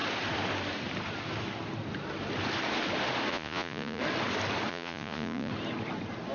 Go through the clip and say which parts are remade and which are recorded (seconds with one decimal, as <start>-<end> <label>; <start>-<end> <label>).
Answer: 0.0-3.3 recorded; 3.3-4.0 remade; 4.0-4.7 recorded; 4.7-5.5 remade; 5.5-6.3 recorded